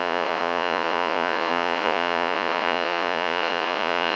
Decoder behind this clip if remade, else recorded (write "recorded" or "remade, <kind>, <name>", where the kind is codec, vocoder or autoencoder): remade, vocoder, Vocos